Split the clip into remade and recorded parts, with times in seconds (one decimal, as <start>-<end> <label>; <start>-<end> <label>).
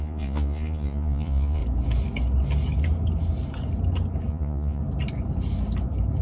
0.0-1.6 remade; 1.6-4.3 recorded; 4.3-4.8 remade; 4.8-6.2 recorded